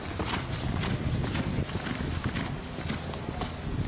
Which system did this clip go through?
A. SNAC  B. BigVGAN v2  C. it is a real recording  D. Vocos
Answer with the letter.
C